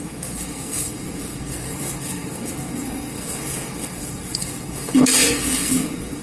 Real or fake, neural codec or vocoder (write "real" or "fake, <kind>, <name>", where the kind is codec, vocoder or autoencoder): fake, codec, SNAC